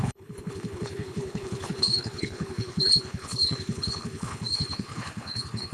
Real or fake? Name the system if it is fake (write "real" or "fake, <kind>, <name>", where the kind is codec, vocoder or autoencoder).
fake, codec, HILCodec